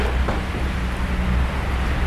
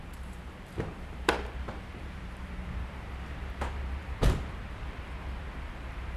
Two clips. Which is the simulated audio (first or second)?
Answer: second